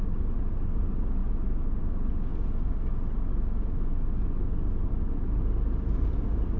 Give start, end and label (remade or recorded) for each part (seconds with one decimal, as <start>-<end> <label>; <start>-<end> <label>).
0.0-6.6 recorded